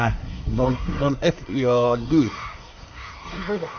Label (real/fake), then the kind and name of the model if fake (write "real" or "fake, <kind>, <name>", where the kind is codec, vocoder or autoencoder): fake, codec, SNAC